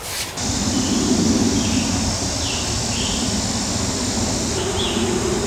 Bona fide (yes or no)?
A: yes